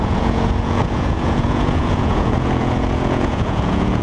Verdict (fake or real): fake